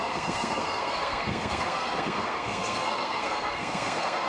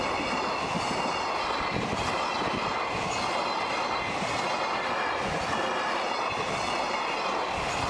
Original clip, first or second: second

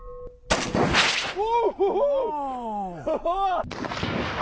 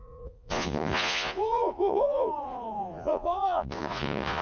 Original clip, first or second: first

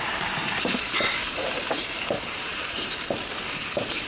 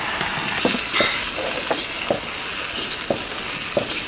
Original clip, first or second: second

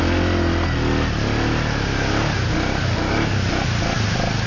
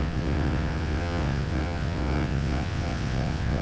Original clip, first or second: first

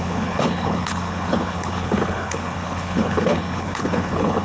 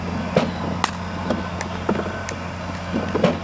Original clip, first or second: second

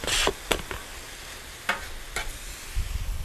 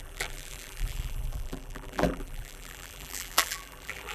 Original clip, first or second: first